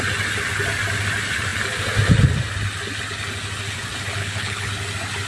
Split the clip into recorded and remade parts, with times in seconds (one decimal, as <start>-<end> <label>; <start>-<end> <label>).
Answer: 0.0-4.2 recorded; 4.2-4.7 remade; 4.7-5.3 recorded